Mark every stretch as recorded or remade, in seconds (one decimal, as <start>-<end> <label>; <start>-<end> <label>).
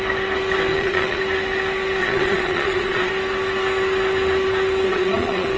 0.0-0.7 recorded; 0.7-1.2 remade; 1.2-2.0 recorded; 2.0-3.1 remade; 3.1-4.9 recorded; 4.9-5.6 remade